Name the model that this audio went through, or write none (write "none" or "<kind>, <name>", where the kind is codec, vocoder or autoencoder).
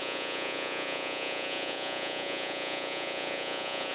vocoder, Vocos